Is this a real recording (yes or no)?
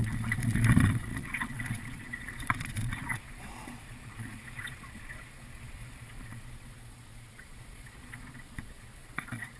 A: no